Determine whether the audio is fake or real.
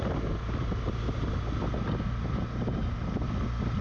real